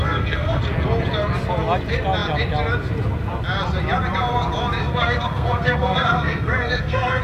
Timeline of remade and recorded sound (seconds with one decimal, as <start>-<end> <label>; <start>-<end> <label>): 0.0-0.6 remade; 0.6-4.8 recorded; 4.8-7.2 remade